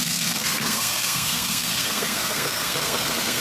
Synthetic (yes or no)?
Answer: yes